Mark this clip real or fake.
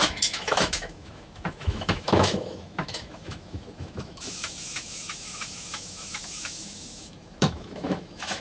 fake